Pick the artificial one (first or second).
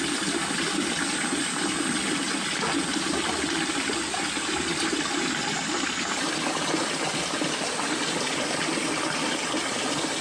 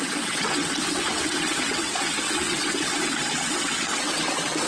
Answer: second